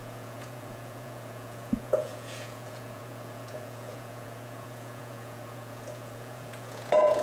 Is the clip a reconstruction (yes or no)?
yes